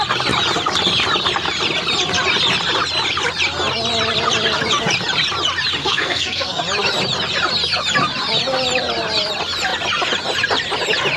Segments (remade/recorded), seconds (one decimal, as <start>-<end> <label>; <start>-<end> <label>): 0.0-5.8 recorded; 5.8-6.6 remade; 6.6-11.2 recorded